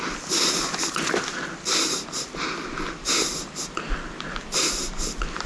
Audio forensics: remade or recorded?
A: recorded